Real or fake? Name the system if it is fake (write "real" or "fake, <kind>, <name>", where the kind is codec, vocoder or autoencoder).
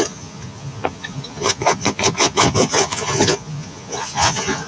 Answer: fake, vocoder, Vocos